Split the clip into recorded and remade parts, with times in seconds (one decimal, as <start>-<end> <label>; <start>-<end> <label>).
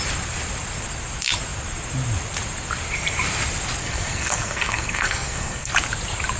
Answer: 0.0-3.8 recorded; 3.8-5.7 remade; 5.7-6.4 recorded